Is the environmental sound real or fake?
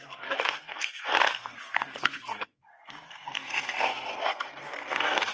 fake